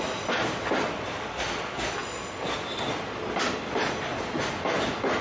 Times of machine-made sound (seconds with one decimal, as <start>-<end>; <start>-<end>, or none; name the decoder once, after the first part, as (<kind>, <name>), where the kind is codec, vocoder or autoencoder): none